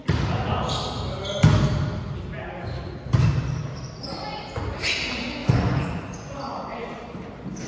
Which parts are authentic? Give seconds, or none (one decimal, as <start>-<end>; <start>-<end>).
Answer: 0.0-5.4; 7.0-7.7